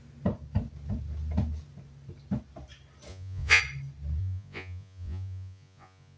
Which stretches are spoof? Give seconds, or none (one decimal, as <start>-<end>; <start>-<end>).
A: 3.1-3.6; 4.2-6.2